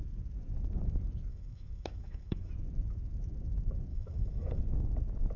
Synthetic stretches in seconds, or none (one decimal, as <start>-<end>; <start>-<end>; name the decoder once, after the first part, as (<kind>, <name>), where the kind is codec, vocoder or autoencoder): 1.3-2.5 (autoencoder, DAC-VAE); 3.9-4.6